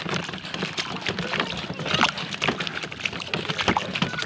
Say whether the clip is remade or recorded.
recorded